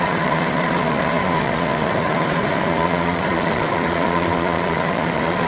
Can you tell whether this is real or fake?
fake